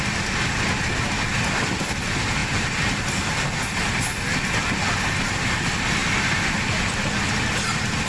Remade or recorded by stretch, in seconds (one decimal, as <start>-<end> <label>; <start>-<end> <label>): 0.0-8.1 recorded